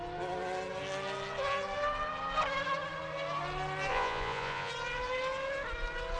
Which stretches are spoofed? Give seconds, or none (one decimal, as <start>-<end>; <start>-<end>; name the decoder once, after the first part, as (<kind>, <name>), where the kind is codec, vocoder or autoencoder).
3.9-4.7 (vocoder, Vocos)